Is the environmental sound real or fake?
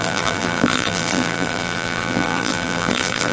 fake